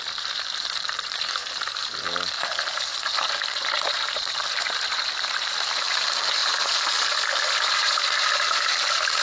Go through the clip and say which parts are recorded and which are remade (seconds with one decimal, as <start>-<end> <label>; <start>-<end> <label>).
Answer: 0.0-9.2 remade